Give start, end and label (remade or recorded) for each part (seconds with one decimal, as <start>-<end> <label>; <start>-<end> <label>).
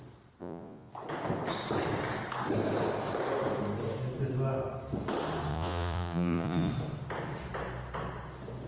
0.0-0.4 recorded; 0.4-0.9 remade; 0.9-5.5 recorded; 5.5-6.7 remade; 6.7-8.7 recorded